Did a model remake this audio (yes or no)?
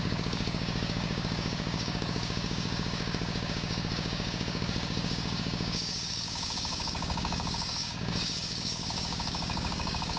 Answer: yes